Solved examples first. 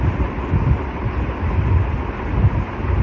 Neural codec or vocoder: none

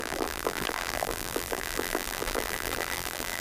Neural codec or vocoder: vocoder, BigVGAN v2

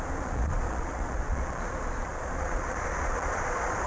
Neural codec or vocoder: vocoder, Vocos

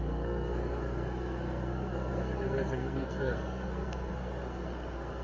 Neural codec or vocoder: codec, SNAC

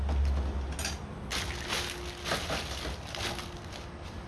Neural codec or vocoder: none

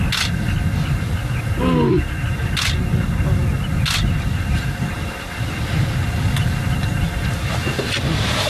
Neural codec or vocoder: none